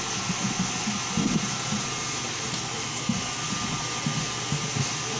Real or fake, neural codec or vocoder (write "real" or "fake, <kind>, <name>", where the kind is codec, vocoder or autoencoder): real